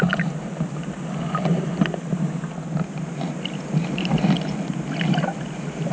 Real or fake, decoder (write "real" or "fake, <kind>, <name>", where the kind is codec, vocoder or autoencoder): real